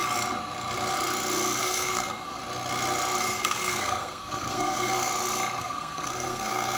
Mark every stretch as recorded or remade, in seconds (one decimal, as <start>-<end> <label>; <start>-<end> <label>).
0.0-1.6 recorded; 1.6-2.4 remade; 2.4-3.2 recorded; 3.2-5.1 remade; 5.1-5.6 recorded; 5.6-6.8 remade